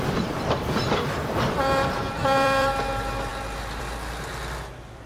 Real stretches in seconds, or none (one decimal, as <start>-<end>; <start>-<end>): none